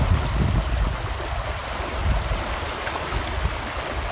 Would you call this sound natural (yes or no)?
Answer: yes